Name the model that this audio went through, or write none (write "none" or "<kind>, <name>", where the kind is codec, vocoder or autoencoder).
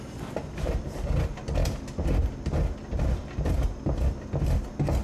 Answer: none